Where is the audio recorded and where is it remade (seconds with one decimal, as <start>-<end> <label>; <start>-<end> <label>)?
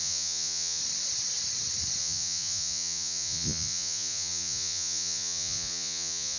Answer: 0.0-0.8 remade; 0.8-2.0 recorded; 2.0-6.4 remade